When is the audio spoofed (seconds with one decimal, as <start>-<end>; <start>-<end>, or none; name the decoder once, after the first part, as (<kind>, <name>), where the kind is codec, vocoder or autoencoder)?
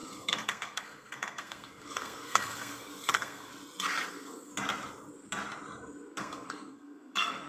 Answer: 0.0-3.5 (codec, SNAC); 4.1-4.5; 6.2-7.5